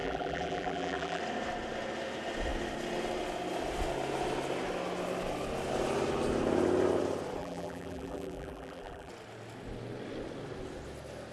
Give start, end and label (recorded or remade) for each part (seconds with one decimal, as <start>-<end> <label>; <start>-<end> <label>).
0.0-1.2 remade; 1.2-7.4 recorded; 7.4-9.1 remade; 9.1-11.3 recorded